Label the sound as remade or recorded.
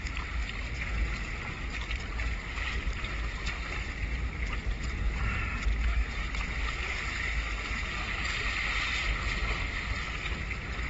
recorded